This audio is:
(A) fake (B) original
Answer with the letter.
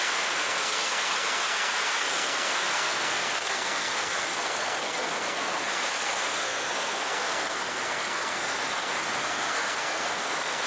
A